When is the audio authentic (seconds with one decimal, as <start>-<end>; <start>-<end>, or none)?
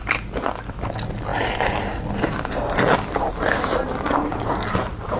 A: 0.0-5.2